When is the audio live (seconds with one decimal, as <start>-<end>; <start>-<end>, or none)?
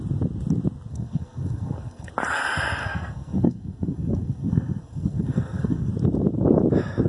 0.0-0.9; 2.1-2.8; 5.9-7.1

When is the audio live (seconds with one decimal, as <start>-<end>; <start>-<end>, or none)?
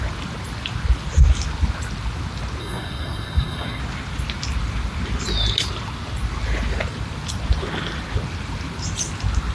0.0-2.6; 3.8-9.5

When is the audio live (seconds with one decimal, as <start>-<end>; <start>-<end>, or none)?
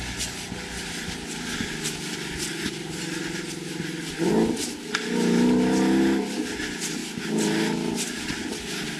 0.0-9.0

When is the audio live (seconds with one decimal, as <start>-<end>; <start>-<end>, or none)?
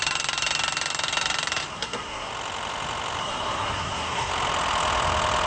0.0-1.7; 2.3-3.2; 4.3-5.5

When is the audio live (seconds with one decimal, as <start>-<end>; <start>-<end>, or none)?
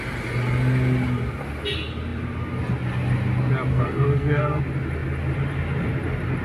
0.0-3.7; 4.6-6.4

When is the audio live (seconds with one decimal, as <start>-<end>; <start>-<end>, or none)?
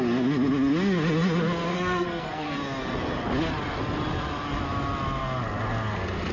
0.0-1.7; 2.5-6.3